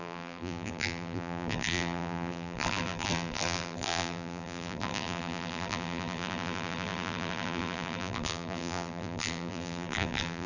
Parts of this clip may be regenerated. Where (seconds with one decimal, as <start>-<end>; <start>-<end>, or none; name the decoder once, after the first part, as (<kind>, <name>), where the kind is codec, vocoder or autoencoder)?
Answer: 0.0-10.5 (vocoder, BigVGAN v2)